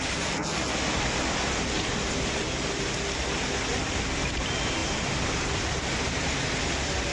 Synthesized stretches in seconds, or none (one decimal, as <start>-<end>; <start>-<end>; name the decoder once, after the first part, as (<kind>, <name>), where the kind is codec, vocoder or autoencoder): 0.0-0.4 (vocoder, BigVGAN v2); 4.3-7.1